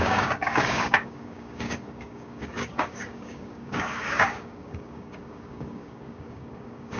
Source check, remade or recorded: remade